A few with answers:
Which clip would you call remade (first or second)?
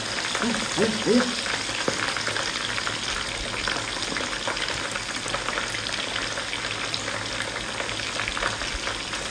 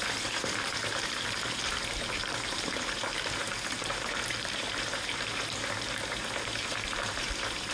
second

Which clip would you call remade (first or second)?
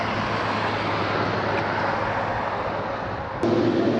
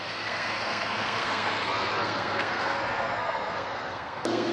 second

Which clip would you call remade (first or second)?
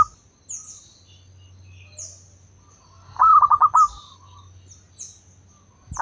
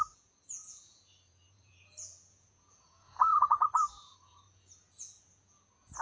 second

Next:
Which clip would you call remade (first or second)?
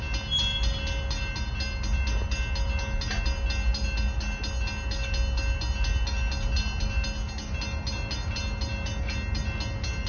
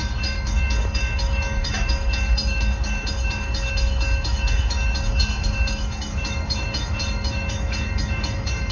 second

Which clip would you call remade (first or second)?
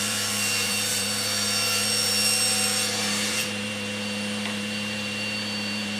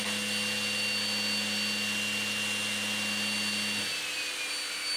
first